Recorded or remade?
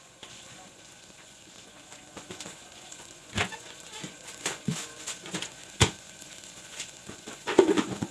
remade